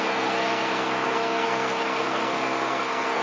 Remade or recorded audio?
remade